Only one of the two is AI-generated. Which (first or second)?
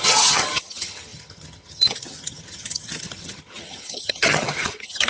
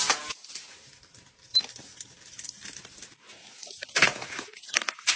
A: first